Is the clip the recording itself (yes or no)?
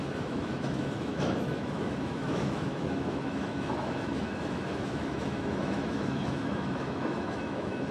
no